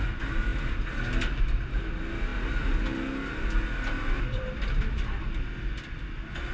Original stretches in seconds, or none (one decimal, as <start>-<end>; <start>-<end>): 0.0-6.5